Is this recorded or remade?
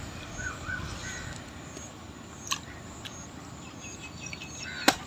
recorded